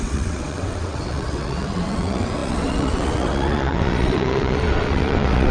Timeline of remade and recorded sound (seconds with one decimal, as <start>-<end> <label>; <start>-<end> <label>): 0.0-5.5 remade